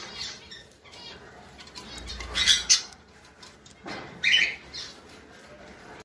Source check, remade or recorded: remade